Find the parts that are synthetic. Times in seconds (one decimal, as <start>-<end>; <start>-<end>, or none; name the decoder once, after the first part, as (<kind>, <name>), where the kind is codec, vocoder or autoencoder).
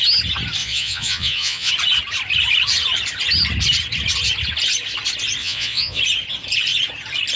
0.6-1.7 (vocoder, Vocos); 5.4-6.0